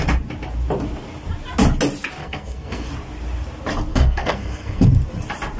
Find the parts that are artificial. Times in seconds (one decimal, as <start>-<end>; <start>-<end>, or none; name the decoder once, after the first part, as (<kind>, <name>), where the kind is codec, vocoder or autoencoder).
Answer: 2.2-2.9 (codec, SNAC); 3.9-4.9